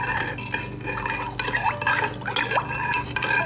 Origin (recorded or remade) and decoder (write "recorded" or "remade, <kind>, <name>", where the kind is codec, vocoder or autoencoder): recorded